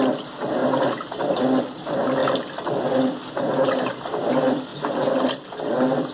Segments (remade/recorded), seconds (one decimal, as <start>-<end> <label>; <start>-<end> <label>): 0.0-6.1 recorded